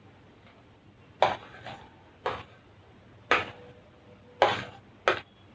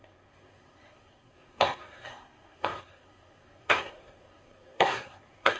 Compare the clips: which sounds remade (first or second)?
second